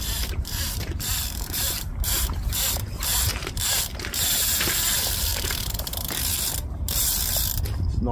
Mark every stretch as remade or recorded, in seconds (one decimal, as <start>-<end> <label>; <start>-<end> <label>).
0.0-3.3 remade; 3.3-4.1 recorded; 4.1-7.5 remade; 7.5-8.1 recorded